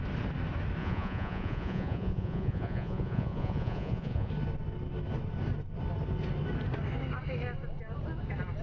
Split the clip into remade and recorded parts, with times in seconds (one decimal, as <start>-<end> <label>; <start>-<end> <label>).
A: 0.0-0.8 recorded; 0.8-4.3 remade; 4.3-8.6 recorded